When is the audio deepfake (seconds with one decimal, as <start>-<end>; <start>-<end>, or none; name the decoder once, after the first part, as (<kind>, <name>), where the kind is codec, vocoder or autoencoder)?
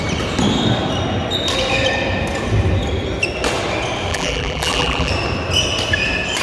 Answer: 4.1-5.1 (vocoder, BigVGAN v2)